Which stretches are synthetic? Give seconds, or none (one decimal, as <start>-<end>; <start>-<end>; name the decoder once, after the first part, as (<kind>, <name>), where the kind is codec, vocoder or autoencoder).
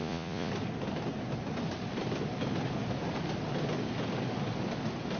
0.0-0.5 (vocoder, Vocos)